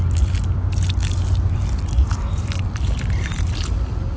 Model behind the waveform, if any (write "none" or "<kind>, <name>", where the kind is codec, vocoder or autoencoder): none